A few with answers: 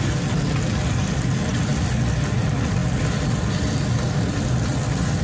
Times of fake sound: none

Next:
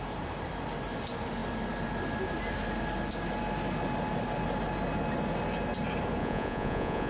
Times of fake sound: 6.2-7.1 (vocoder, Vocos)

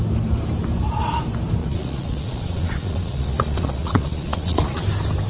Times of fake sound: 1.6-4.8 (vocoder, Vocos)

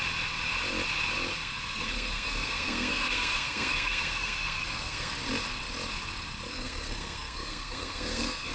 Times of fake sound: 1.3-5.1 (codec, SNAC); 6.5-8.5

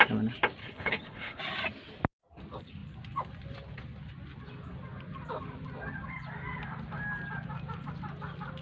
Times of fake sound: 0.6-1.4 (codec, HILCodec)

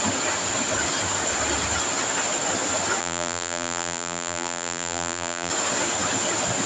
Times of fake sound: 3.0-5.5 (vocoder, BigVGAN v2)

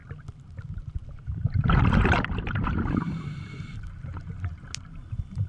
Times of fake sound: 1.0-4.3 (vocoder, BigVGAN v2)

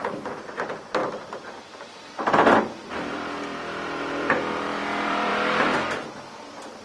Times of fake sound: 0.0-5.3 (vocoder, BigVGAN v2); 6.3-6.8